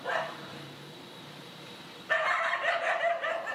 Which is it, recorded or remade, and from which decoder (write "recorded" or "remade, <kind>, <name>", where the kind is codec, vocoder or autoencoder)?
remade, vocoder, BigVGAN v2